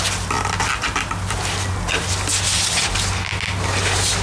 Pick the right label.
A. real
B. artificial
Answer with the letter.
A